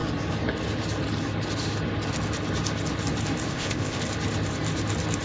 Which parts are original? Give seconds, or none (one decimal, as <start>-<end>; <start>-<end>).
0.0-3.5; 4.0-5.2